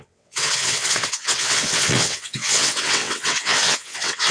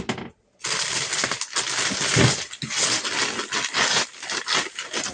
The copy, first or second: first